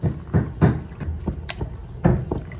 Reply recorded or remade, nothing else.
recorded